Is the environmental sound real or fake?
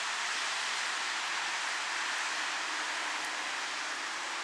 real